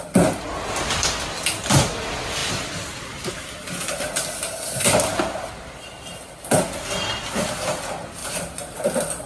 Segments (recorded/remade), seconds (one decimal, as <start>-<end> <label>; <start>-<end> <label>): 0.0-8.2 recorded; 8.2-8.8 remade; 8.8-9.3 recorded